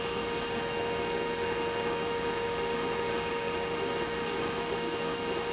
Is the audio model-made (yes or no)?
yes